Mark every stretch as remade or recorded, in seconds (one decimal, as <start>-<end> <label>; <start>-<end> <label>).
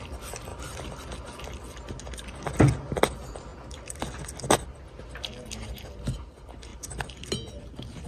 0.0-0.5 recorded; 0.5-1.0 remade; 1.0-6.7 recorded; 6.7-7.3 remade; 7.3-8.1 recorded